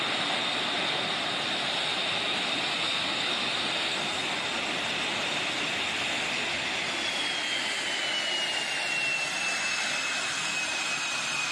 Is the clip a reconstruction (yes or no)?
no